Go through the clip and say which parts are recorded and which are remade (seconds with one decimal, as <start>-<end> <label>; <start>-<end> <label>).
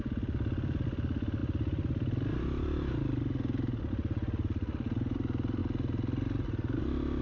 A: 0.0-7.2 recorded